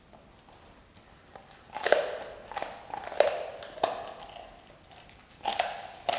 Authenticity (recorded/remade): recorded